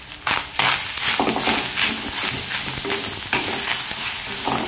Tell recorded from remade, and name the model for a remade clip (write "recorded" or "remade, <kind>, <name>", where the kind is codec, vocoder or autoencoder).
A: recorded